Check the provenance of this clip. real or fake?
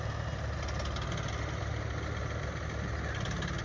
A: real